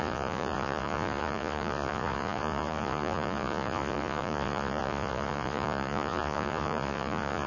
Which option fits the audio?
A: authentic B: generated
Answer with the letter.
B